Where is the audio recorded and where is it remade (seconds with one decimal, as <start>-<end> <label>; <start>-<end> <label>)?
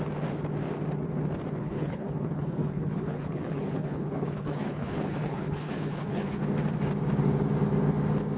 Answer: 0.0-1.6 recorded; 1.6-6.4 remade; 6.4-8.4 recorded